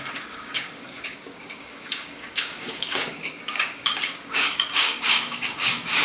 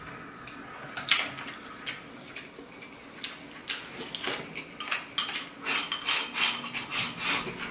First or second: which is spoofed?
first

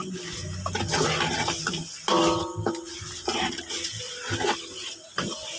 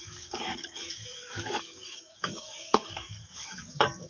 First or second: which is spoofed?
second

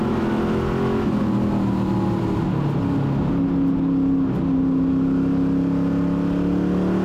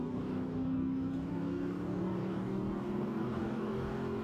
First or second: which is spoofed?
second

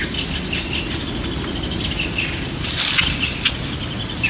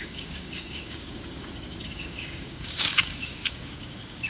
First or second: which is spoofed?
second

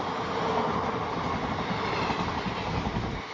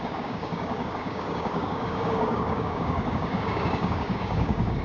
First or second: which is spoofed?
second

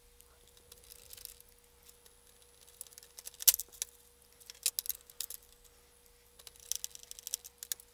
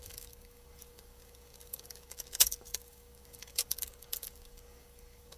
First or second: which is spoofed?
second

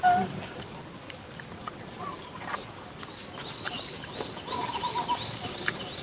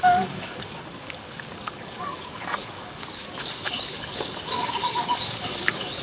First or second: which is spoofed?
second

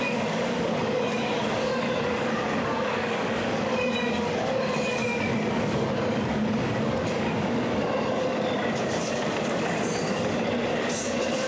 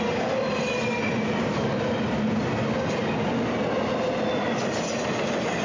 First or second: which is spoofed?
first